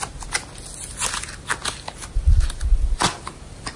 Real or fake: real